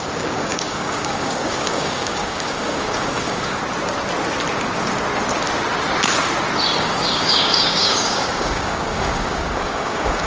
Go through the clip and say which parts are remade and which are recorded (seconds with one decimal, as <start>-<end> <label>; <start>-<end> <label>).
0.0-3.6 remade; 3.6-6.8 recorded; 6.8-10.3 remade